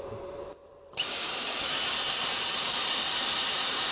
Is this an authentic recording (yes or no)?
no